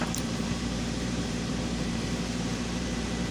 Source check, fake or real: fake